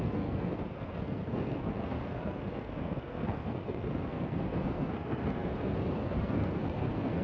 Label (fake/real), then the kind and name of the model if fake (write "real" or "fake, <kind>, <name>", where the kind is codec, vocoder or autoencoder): fake, codec, SNAC